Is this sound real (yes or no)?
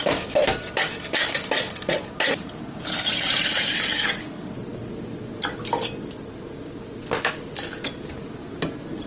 yes